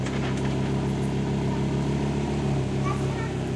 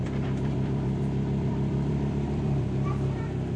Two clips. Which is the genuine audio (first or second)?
first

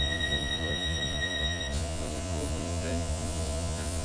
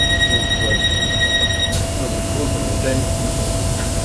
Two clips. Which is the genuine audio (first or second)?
second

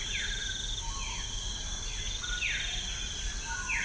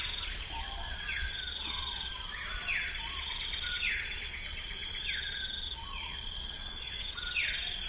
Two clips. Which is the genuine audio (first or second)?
first